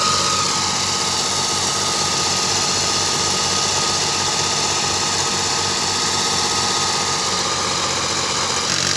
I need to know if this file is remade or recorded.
recorded